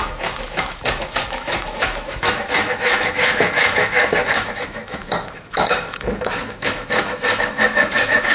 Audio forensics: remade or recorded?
remade